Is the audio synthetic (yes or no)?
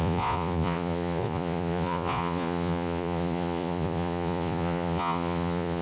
yes